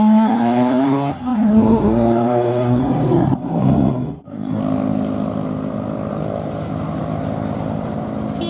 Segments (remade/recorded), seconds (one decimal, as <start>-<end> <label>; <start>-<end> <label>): 0.0-4.6 remade; 4.6-8.5 recorded